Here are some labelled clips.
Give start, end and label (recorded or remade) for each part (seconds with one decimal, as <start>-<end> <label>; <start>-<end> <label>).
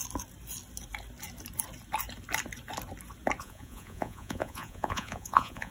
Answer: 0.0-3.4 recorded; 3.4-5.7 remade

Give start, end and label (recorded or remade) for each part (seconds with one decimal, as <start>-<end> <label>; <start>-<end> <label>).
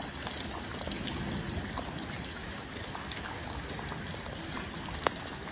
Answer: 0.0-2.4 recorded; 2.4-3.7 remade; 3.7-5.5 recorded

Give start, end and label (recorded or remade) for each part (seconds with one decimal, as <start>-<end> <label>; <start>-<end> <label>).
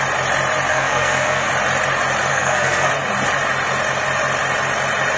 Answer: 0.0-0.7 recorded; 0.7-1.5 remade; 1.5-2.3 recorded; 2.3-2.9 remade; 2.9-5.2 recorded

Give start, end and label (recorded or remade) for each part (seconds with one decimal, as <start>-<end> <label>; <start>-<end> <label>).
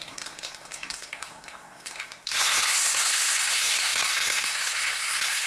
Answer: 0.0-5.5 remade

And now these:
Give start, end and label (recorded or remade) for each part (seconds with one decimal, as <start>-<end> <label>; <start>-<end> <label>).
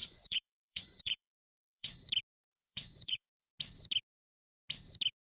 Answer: 0.0-2.1 remade; 2.1-2.5 recorded; 2.5-3.5 remade; 3.5-5.3 recorded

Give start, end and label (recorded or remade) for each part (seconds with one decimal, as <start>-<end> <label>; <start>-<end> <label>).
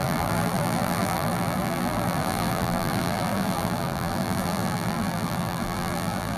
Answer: 0.0-6.4 remade